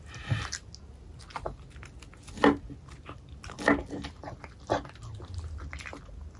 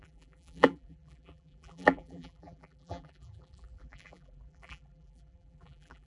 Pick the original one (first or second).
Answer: first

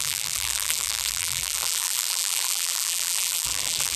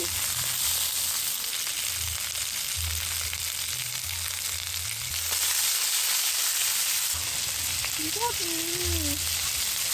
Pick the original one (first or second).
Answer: second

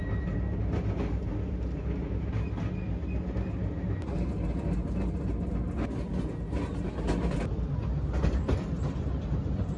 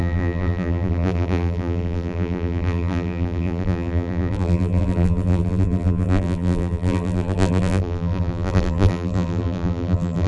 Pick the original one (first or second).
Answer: first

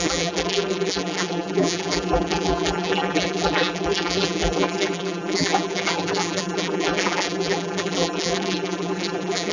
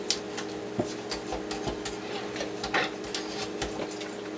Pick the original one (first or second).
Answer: second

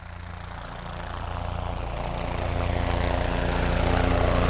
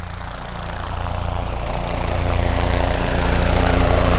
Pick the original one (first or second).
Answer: first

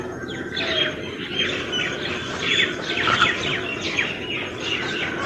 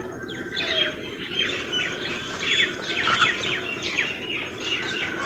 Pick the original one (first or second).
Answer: first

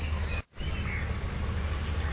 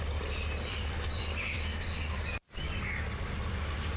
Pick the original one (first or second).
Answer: first